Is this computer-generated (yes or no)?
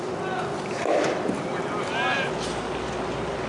no